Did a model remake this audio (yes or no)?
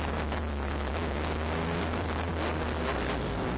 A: no